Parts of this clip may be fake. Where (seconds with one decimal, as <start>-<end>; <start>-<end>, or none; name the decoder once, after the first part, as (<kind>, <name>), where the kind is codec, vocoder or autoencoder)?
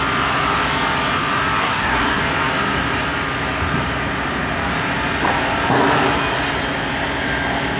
1.6-2.2 (codec, SNAC)